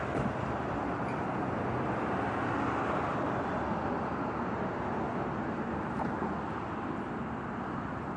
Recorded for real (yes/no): yes